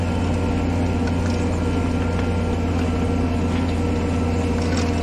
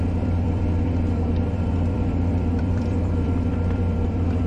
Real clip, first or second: first